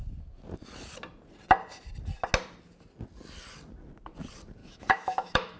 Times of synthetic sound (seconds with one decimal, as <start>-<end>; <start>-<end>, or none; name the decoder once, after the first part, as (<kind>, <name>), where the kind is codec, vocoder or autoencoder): 4.6-5.6 (autoencoder, DAC-VAE)